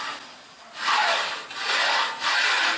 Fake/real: real